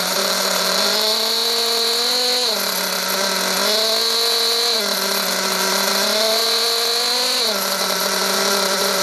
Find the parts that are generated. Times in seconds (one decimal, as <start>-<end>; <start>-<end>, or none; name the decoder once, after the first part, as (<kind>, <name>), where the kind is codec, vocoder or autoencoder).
0.0-1.4 (vocoder, BigVGAN v2); 5.5-6.4; 7.8-9.0